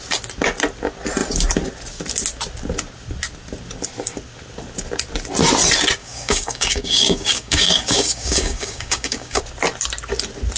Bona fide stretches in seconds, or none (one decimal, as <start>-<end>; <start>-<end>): 0.0-6.0; 9.4-10.6